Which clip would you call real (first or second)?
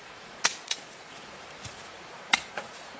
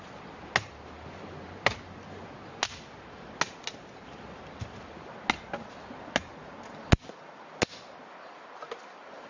second